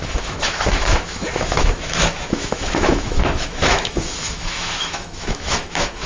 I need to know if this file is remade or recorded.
remade